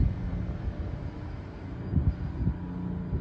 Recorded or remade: recorded